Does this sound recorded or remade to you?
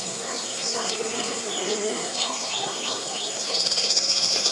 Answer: remade